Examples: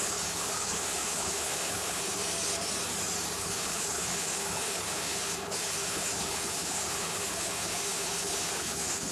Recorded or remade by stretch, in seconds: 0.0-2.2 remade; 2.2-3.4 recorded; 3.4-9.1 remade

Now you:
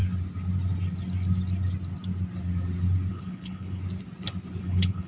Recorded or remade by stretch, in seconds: 0.0-3.1 recorded; 3.1-3.8 remade; 3.8-4.6 recorded; 4.6-5.1 remade

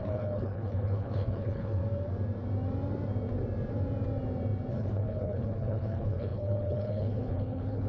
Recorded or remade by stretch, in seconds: 0.0-1.8 remade; 1.8-4.7 recorded; 4.7-7.9 remade

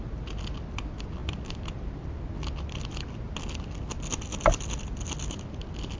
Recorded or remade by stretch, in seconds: 0.0-6.0 recorded

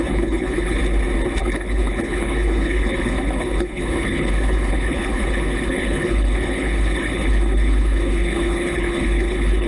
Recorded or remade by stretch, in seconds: 0.0-0.8 remade; 0.8-1.4 recorded; 1.4-9.7 remade

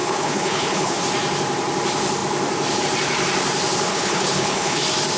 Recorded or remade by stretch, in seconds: 0.0-1.0 remade; 1.0-3.9 recorded; 3.9-4.8 remade; 4.8-5.2 recorded

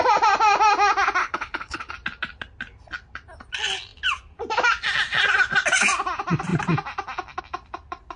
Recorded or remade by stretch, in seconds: 0.0-1.2 recorded; 1.2-1.9 remade; 1.9-8.2 recorded